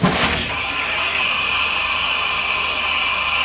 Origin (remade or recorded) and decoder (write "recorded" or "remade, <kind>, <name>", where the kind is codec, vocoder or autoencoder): recorded